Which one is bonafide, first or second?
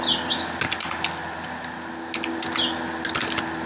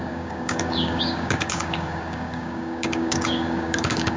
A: first